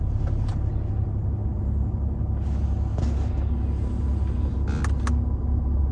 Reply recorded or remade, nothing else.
recorded